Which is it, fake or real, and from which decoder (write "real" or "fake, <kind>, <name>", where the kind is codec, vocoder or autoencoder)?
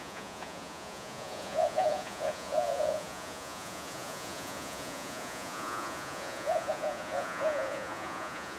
fake, vocoder, Vocos